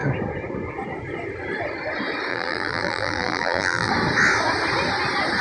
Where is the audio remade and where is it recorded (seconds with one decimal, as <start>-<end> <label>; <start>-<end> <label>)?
0.0-2.3 recorded; 2.3-3.9 remade; 3.9-5.4 recorded